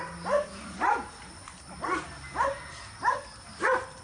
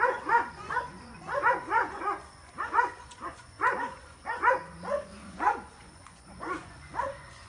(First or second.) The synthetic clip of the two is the second